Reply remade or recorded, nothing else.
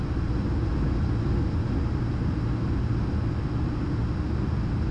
recorded